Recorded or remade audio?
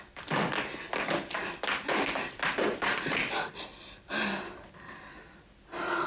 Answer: recorded